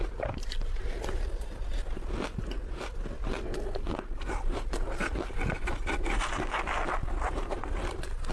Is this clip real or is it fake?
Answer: fake